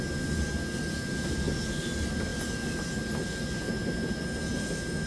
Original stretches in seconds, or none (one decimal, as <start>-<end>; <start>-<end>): 0.0-5.1